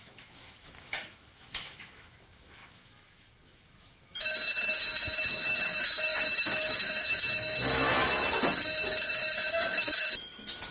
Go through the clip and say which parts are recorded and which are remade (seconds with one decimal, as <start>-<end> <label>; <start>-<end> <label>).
0.0-10.7 remade